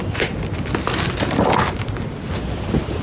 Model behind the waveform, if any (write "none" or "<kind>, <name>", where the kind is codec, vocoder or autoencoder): none